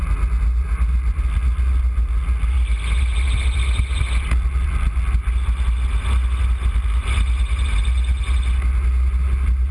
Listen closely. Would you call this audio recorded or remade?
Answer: recorded